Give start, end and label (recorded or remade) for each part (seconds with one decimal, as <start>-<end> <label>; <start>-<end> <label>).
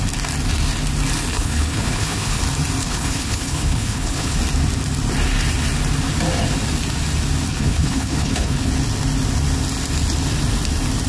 0.0-1.3 recorded; 1.3-2.4 remade; 2.4-2.8 recorded; 2.8-4.4 remade; 4.4-7.5 recorded; 7.5-8.7 remade; 8.7-11.1 recorded